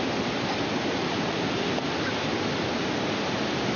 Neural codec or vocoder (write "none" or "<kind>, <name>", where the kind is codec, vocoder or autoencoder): none